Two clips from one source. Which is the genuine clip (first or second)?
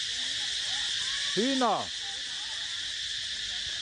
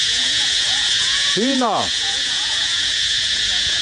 first